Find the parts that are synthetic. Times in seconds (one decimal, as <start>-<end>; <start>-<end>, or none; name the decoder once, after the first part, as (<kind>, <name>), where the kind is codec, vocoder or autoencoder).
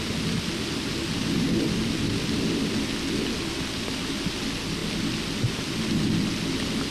none